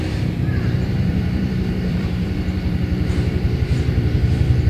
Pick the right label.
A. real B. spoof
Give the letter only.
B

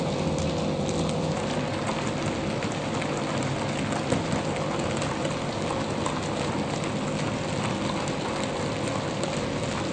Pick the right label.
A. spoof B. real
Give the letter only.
B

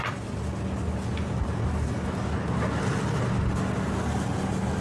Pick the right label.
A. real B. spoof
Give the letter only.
A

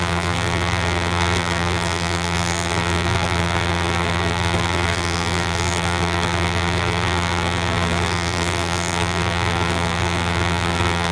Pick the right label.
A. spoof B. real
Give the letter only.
A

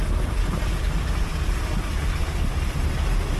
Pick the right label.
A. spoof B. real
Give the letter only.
B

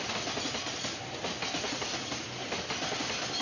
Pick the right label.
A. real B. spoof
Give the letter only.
A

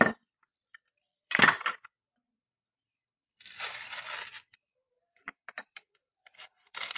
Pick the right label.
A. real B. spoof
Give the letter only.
B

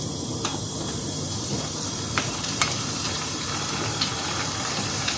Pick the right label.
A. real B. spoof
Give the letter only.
B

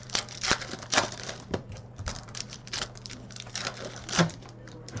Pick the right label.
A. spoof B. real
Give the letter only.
A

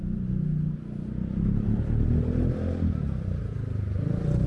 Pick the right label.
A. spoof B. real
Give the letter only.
B